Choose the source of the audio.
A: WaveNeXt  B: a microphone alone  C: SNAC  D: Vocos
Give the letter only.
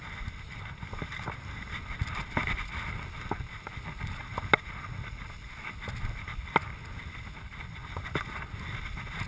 B